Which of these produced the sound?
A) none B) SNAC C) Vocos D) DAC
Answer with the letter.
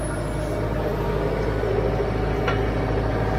A